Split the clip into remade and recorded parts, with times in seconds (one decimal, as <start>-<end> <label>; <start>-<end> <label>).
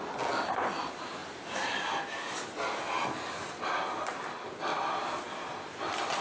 0.0-6.2 recorded